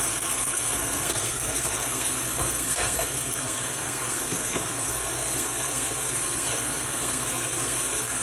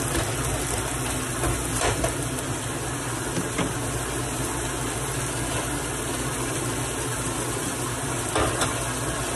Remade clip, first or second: first